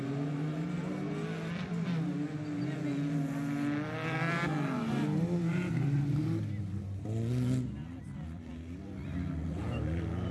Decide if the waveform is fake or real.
real